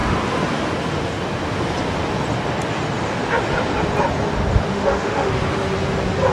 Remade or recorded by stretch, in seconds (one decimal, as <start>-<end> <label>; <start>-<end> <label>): 0.0-4.7 recorded; 4.7-5.3 remade; 5.3-6.3 recorded